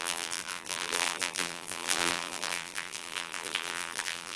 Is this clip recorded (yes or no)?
no